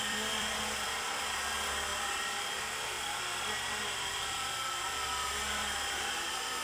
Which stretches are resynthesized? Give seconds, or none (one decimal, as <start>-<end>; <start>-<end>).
0.0-6.6